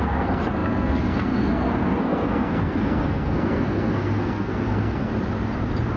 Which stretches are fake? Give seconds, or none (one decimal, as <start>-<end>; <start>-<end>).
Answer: 0.0-5.1